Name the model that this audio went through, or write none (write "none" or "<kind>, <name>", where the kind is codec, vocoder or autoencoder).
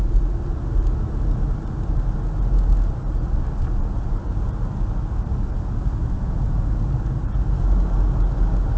none